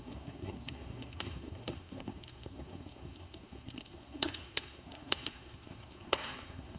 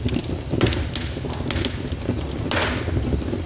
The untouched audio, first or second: second